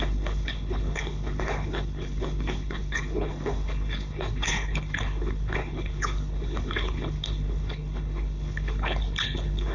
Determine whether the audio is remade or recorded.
remade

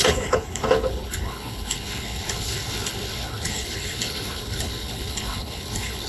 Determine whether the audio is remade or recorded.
remade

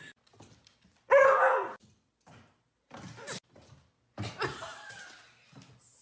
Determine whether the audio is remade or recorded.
recorded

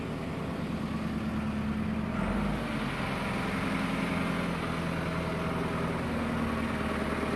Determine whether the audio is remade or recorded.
recorded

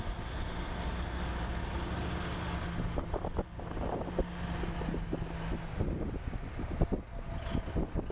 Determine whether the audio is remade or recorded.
recorded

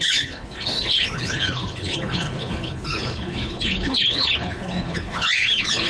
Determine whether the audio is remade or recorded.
remade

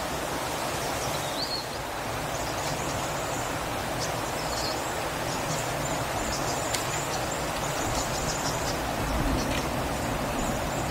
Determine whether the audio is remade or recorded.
recorded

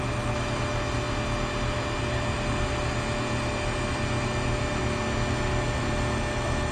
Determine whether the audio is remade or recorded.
recorded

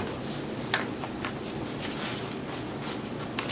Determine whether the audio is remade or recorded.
recorded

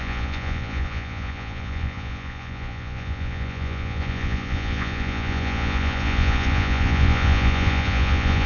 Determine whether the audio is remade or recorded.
remade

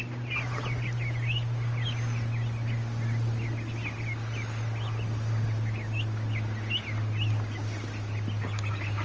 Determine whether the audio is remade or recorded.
recorded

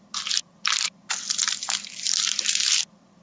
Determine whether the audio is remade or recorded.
recorded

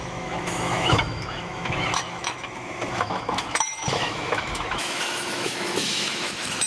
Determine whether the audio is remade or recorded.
remade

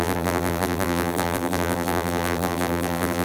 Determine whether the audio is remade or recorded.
remade